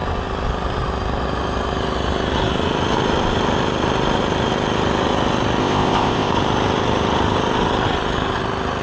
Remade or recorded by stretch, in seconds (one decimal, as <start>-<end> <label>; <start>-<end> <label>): 0.0-5.6 recorded; 5.6-6.3 remade; 6.3-8.8 recorded